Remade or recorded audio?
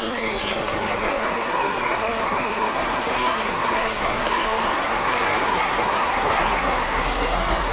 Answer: remade